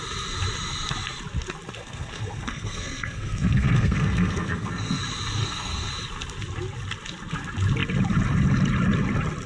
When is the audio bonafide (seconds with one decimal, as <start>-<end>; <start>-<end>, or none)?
0.0-1.8; 5.0-5.4; 5.9-9.5